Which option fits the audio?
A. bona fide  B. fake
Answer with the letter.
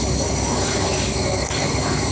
B